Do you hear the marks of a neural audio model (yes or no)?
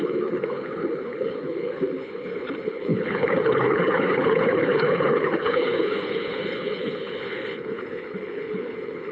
yes